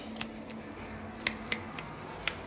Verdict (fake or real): real